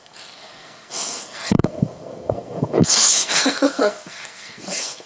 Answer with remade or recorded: remade